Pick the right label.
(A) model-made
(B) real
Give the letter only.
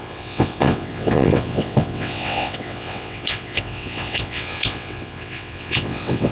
A